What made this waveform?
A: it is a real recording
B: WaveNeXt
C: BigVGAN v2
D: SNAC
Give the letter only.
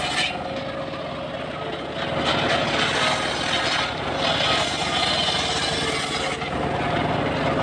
A